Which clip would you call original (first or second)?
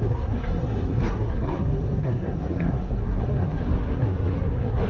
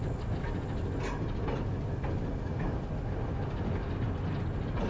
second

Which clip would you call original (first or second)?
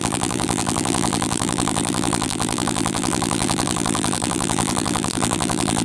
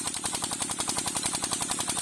second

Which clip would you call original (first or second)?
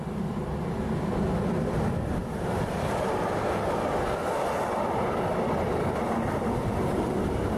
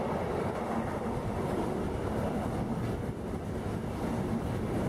first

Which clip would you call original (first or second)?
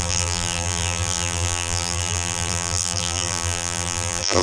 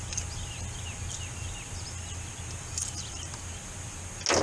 second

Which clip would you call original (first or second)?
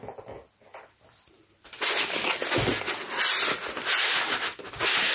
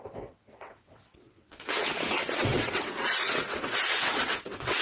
first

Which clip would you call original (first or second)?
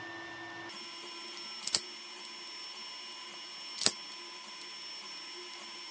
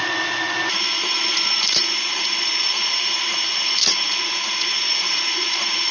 first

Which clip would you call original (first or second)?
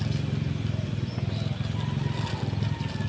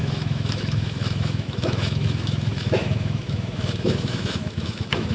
first